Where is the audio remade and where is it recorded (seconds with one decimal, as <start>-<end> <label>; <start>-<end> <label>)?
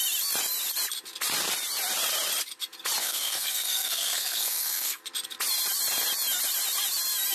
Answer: 0.0-3.0 recorded; 3.0-5.0 remade; 5.0-7.3 recorded